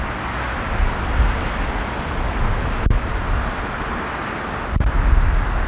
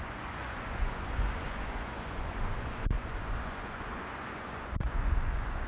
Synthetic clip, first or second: second